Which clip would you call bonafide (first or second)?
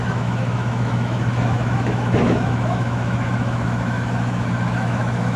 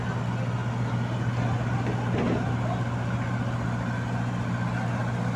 second